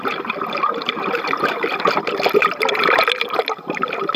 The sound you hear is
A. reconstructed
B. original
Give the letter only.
B